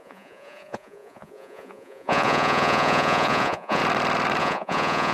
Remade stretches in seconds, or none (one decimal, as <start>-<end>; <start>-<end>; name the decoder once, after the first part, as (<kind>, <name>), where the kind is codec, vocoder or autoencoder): 0.0-3.8 (vocoder, Vocos); 4.4-5.1